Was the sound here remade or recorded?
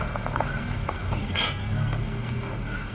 remade